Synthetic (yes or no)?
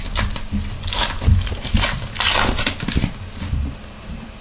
no